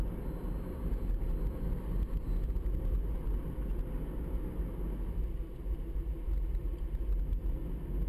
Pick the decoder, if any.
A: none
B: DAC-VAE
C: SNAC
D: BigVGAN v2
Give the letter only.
A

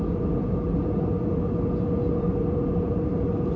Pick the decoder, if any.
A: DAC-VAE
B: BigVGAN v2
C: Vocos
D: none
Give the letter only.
D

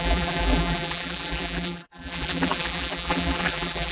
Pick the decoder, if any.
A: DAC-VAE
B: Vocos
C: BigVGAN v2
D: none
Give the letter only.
C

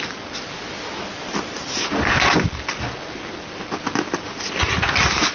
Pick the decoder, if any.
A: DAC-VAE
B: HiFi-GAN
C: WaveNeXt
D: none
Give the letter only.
D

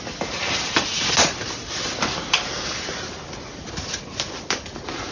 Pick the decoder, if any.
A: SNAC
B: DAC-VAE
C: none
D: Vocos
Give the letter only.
C